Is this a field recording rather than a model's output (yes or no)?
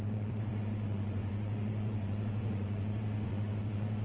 no